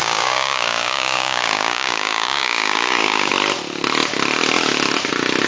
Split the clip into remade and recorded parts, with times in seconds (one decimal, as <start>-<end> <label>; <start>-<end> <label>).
0.0-3.3 remade; 3.3-5.5 recorded